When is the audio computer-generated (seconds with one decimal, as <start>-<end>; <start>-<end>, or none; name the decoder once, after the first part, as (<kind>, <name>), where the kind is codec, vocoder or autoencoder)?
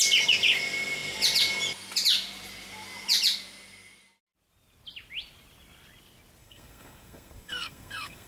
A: 6.4-8.3 (codec, SNAC)